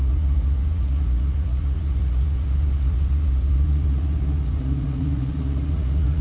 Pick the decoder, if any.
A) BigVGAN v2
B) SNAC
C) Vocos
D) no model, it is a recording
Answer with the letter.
C